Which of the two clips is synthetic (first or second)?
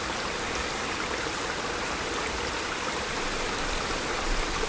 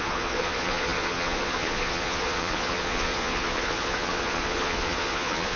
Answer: second